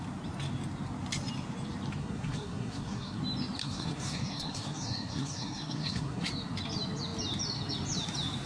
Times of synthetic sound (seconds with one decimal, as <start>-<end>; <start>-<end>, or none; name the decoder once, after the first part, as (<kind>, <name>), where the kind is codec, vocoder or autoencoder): 2.0-3.2 (codec, SNAC); 3.6-6.3